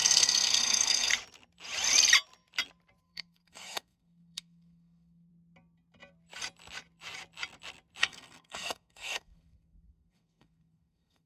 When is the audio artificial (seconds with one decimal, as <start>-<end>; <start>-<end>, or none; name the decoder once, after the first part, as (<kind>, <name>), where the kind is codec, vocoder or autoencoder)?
0.0-1.1 (codec, SNAC); 3.0-5.3; 8.0-11.3